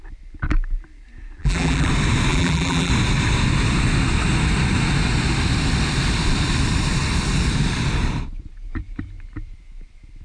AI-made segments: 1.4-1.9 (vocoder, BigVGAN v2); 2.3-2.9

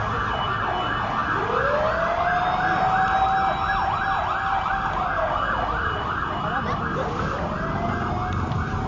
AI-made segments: none

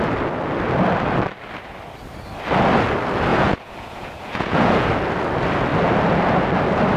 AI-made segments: 3.3-4.9 (vocoder, Vocos)

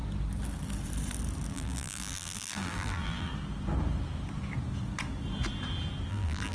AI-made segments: 1.5-3.3 (vocoder, BigVGAN v2); 6.1-6.5

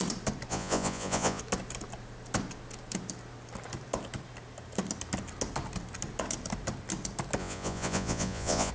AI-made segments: 0.5-1.4 (vocoder, Vocos); 7.4-8.7

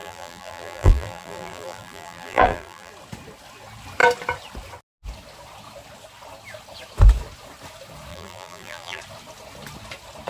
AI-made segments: 0.0-2.9 (vocoder, BigVGAN v2); 8.1-9.0

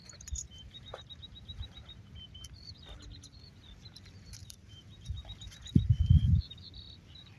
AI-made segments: 0.0-2.2 (vocoder, BigVGAN v2); 4.4-5.6

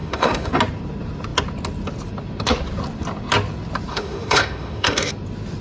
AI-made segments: 0.0-0.5 (autoencoder, DAC-VAE); 3.9-5.1